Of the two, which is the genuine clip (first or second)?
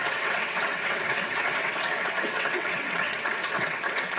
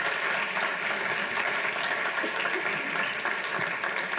second